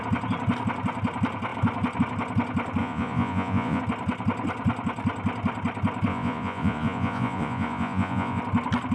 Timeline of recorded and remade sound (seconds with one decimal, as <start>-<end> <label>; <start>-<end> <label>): 0.0-2.8 recorded; 2.8-3.8 remade; 3.8-6.1 recorded; 6.1-8.4 remade; 8.4-8.9 recorded